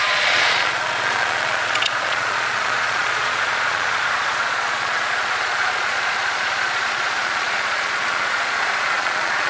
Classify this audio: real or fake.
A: fake